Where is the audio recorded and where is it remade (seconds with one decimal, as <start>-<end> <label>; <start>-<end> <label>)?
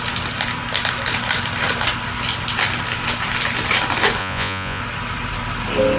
0.0-4.2 recorded; 4.2-4.8 remade; 4.8-6.0 recorded